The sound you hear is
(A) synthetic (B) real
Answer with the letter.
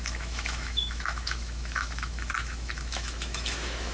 A